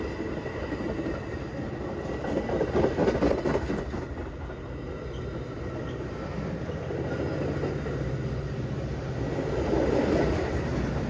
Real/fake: real